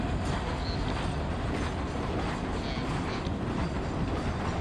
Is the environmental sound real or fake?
real